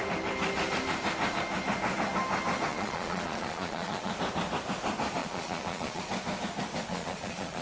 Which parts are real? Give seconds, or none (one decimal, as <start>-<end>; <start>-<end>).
0.0-2.7; 4.1-5.2; 6.0-6.9